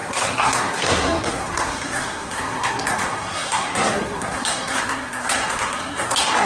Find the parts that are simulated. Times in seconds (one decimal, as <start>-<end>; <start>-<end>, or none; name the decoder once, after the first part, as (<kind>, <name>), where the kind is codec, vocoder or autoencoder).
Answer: 0.0-6.5 (codec, SNAC)